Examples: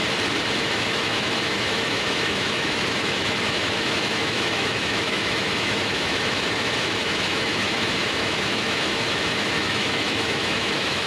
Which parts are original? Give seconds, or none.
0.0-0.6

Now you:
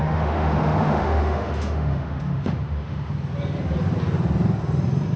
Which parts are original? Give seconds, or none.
3.1-5.2

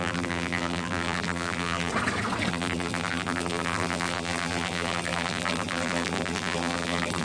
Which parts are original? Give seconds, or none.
1.9-2.5

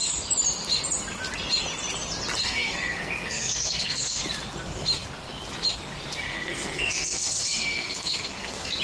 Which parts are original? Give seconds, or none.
0.0-2.4; 4.2-6.3

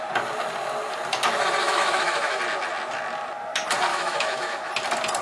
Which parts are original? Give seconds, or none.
0.0-1.6; 2.4-3.9; 4.7-5.2

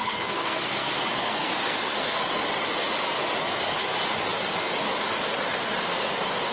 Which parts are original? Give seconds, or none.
2.2-6.5